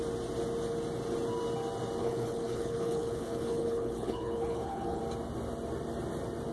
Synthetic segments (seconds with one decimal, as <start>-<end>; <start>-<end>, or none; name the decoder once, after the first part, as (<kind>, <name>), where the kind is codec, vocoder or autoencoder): 2.0-5.0 (codec, HILCodec)